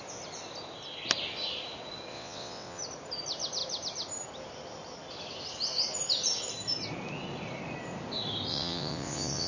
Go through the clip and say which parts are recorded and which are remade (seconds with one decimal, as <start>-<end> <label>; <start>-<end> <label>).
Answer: 0.0-2.1 recorded; 2.1-2.8 remade; 2.8-8.5 recorded; 8.5-9.5 remade